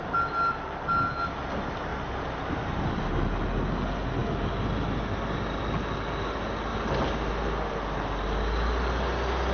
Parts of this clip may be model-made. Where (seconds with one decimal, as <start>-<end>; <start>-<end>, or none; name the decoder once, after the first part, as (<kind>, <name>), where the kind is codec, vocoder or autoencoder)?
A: none